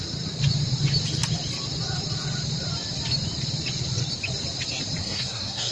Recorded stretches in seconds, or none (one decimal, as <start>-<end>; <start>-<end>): 0.0-5.0